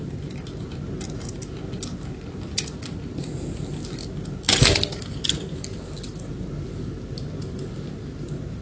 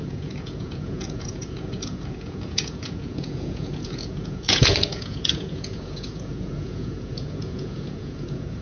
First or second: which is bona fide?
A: first